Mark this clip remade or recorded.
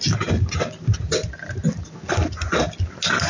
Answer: recorded